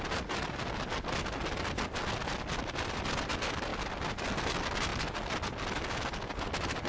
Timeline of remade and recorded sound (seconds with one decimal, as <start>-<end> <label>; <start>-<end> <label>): 0.0-6.9 recorded